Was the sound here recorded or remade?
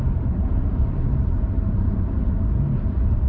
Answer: remade